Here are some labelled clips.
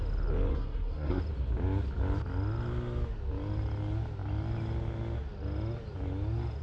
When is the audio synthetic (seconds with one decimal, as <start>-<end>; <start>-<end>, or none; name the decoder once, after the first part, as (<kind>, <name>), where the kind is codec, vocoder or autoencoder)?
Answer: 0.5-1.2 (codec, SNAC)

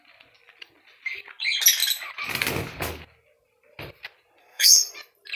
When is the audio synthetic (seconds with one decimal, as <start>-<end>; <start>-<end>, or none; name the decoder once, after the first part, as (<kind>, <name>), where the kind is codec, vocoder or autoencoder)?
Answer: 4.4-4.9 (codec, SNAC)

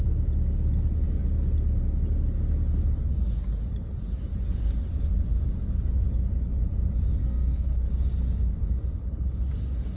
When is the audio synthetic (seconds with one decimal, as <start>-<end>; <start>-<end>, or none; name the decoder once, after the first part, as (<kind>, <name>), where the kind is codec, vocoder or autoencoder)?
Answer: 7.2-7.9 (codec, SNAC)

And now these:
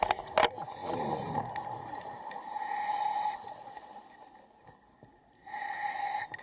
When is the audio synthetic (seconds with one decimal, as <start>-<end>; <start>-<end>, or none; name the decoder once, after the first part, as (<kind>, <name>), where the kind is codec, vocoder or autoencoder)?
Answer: none

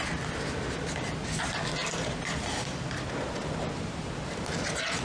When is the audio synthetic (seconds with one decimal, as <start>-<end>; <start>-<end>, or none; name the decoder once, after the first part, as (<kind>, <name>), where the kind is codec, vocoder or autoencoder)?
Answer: 1.8-4.5 (vocoder, BigVGAN v2)